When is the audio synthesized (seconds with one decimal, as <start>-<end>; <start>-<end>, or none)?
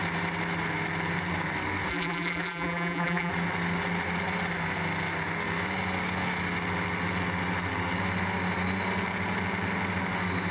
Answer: 1.9-3.3